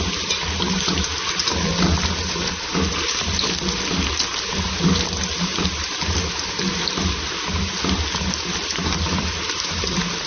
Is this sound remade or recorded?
recorded